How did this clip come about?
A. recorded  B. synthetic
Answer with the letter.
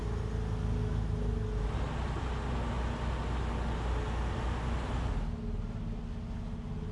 A